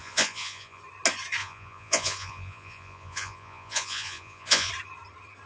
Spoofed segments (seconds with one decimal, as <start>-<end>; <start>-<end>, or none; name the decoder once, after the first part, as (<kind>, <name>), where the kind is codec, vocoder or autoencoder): 0.0-0.8 (vocoder, Vocos); 1.4-4.7